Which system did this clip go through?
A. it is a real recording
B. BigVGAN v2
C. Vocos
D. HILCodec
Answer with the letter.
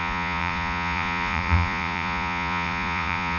C